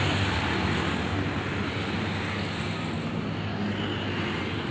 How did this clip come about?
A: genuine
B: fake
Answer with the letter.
A